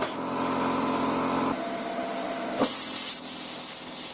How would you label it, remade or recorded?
recorded